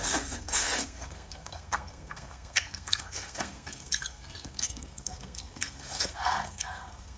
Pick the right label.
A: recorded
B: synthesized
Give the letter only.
B